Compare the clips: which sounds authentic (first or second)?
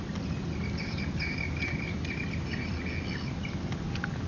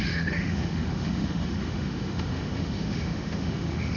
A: first